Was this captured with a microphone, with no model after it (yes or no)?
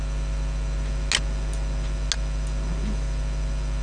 yes